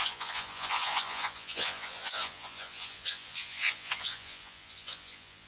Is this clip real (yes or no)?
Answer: no